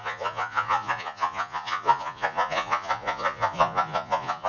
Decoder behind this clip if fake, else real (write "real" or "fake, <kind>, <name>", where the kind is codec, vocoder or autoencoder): fake, vocoder, Vocos